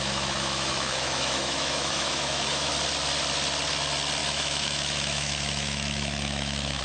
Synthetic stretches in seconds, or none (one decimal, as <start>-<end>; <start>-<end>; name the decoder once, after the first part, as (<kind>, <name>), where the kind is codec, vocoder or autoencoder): 0.0-2.7 (autoencoder, DAC-VAE); 4.2-6.8